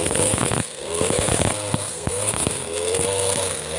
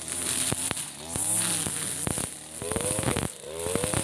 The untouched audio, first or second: second